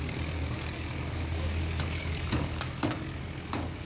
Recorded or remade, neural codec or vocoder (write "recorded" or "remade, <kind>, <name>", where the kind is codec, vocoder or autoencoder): remade, codec, DAC